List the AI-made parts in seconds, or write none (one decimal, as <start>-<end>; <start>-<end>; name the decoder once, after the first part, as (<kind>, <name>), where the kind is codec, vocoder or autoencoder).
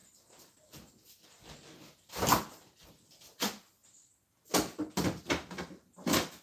none